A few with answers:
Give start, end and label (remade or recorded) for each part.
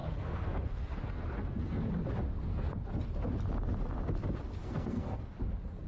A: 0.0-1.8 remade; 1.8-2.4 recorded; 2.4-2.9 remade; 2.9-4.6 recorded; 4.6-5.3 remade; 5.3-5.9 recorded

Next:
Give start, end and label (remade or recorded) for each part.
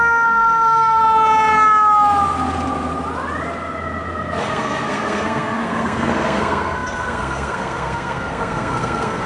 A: 0.0-1.0 remade; 1.0-4.4 recorded; 4.4-9.3 remade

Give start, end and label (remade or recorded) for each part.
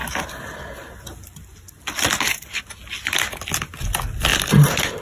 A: 0.0-5.0 recorded